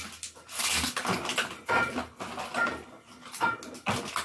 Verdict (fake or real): real